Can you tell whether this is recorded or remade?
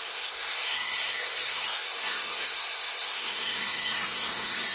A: remade